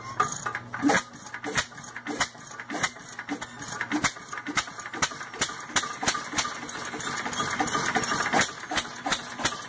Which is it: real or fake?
real